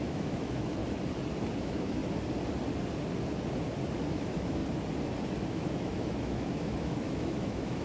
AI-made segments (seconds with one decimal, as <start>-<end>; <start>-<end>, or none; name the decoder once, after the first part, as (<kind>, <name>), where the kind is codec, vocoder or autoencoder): 0.0-0.8 (autoencoder, DAC-VAE); 1.6-2.0; 4.1-4.6; 5.5-7.8